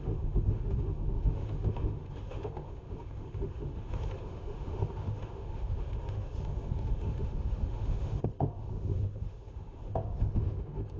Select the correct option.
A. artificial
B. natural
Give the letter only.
A